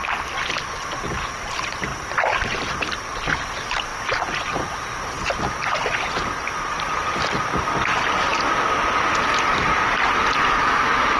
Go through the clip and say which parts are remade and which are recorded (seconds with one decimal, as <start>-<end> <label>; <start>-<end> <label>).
0.0-11.2 recorded